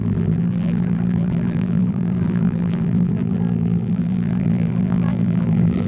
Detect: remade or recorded remade